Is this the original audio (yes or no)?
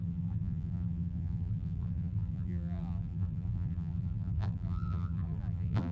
no